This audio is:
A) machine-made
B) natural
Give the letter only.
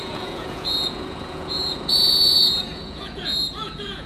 A